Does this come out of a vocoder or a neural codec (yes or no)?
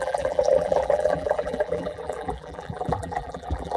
yes